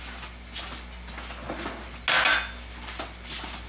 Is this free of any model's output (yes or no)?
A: yes